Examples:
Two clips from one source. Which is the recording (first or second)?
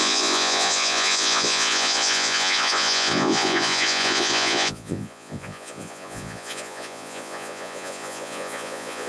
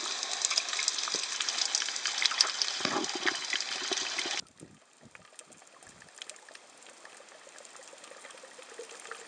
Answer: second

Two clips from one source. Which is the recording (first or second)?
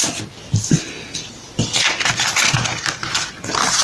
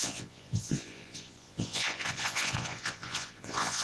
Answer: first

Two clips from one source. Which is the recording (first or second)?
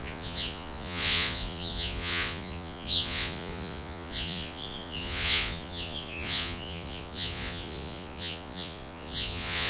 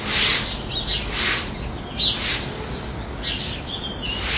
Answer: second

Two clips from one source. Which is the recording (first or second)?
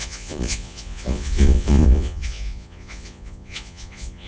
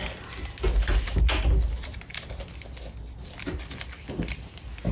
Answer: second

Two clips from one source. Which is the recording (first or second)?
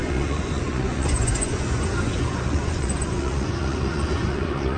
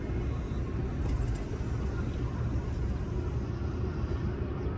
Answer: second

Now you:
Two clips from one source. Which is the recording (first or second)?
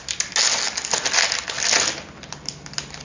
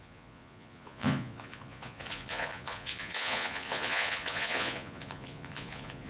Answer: first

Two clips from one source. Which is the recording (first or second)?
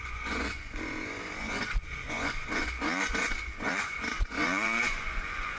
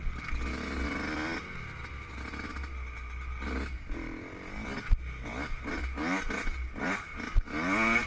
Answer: second